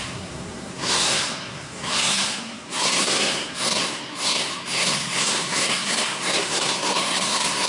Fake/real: fake